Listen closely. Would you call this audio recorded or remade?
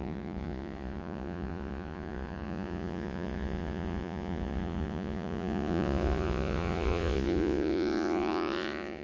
remade